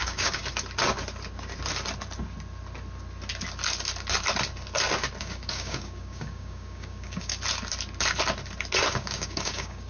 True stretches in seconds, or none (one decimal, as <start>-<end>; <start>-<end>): 0.4-5.2; 7.3-8.9